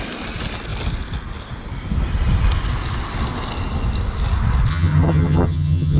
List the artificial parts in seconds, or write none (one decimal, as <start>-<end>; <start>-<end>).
4.7-6.0